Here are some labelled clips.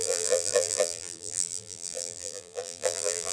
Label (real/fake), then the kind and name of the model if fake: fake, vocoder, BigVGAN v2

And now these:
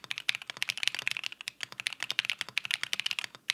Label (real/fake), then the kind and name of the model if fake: real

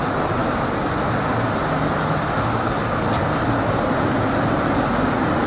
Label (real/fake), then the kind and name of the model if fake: real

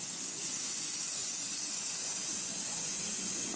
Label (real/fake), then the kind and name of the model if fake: fake, vocoder, Vocos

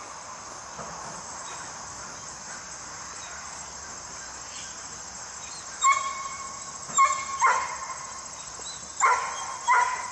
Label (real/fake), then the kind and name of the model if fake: real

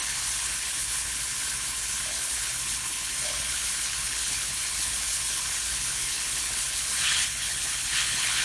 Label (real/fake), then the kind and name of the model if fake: fake, codec, HILCodec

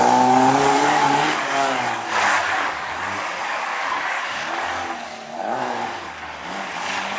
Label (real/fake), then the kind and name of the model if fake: fake, codec, DAC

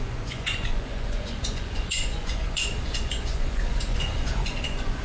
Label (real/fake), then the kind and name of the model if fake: fake, vocoder, Vocos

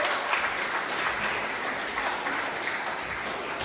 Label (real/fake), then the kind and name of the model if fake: real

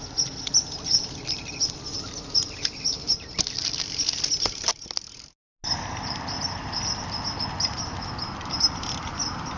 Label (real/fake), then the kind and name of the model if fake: real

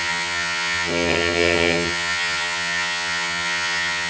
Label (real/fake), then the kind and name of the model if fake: fake, vocoder, HiFi-GAN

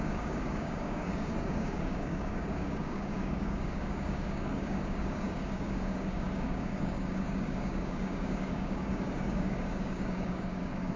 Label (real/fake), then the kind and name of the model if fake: fake, codec, DAC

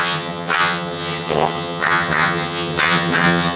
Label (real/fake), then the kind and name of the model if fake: fake, vocoder, HiFi-GAN